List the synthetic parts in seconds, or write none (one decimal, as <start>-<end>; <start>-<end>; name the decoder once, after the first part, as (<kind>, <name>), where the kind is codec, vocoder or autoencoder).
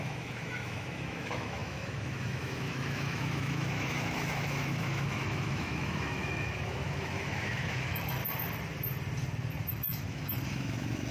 0.0-8.2 (autoencoder, DAC-VAE); 9.7-11.1